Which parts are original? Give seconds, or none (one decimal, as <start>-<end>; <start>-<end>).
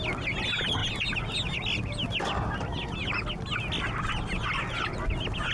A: 0.0-5.5